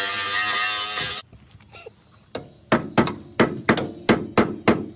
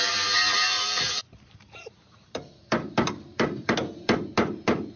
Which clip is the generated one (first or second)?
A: second